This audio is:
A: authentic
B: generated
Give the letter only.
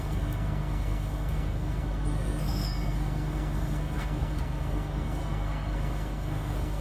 B